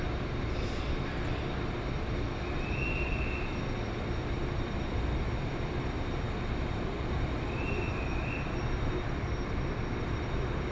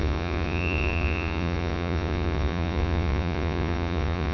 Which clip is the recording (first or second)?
first